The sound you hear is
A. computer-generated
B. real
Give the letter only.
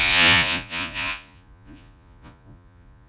A